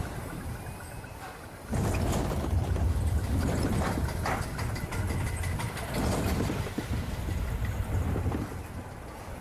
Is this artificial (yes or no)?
no